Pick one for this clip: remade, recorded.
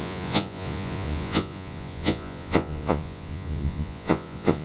remade